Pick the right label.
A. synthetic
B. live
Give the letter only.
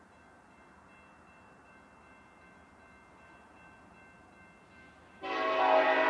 B